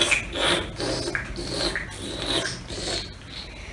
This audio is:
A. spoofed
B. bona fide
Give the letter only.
B